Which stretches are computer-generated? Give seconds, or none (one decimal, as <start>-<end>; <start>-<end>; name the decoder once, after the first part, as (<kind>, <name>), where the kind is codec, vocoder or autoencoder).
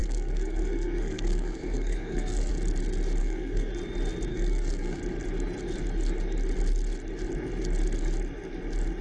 0.0-2.5 (codec, SNAC); 3.2-3.7; 4.3-5.0